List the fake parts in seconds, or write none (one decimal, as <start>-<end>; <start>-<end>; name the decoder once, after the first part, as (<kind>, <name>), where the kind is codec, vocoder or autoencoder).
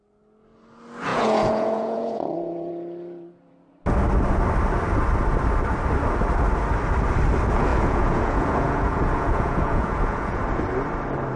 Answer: 1.1-2.7 (vocoder, Vocos); 7.7-10.4